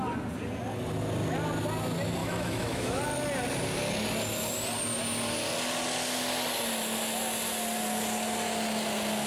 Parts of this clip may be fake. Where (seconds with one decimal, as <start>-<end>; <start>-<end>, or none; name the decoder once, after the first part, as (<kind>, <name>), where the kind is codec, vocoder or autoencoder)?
2.2-3.0 (autoencoder, DAC-VAE)